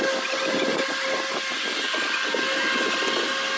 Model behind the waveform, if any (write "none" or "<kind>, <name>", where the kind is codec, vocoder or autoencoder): none